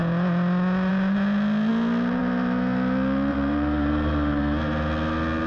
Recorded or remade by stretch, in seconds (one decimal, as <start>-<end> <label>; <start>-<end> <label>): 0.0-3.3 recorded; 3.3-4.4 remade; 4.4-5.5 recorded